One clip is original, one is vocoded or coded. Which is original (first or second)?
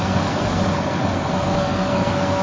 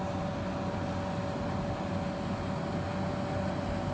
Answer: second